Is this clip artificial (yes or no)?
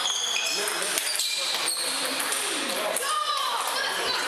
yes